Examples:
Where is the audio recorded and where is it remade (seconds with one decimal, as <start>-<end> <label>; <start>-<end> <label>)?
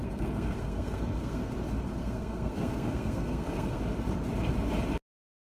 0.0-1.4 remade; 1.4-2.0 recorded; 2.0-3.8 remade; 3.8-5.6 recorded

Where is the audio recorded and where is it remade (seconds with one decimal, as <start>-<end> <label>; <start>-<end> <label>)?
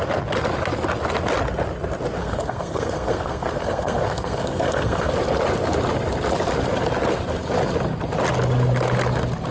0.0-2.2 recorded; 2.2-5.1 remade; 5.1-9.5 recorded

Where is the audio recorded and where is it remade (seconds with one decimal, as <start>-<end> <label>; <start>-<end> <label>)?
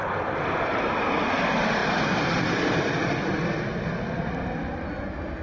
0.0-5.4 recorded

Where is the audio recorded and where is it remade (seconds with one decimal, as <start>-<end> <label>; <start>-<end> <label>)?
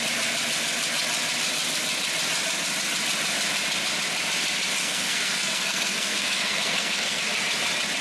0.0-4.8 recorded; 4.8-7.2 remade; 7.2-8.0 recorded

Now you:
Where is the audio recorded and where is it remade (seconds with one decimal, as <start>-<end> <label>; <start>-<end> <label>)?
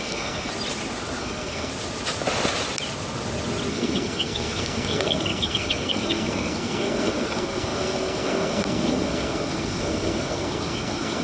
0.0-0.5 remade; 0.5-1.2 recorded; 1.2-1.7 remade; 1.7-3.7 recorded; 3.7-11.2 remade